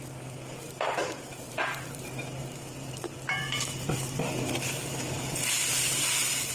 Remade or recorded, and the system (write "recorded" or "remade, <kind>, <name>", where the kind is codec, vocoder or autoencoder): remade, vocoder, BigVGAN v2